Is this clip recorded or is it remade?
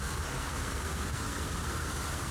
remade